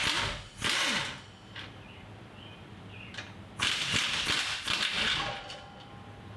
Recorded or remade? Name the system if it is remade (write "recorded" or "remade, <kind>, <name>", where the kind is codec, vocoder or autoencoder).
recorded